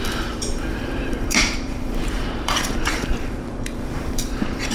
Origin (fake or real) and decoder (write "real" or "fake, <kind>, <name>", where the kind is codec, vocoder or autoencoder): fake, vocoder, BigVGAN v2